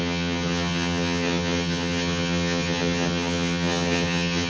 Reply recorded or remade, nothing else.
remade